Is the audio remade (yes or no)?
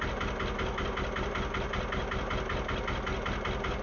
no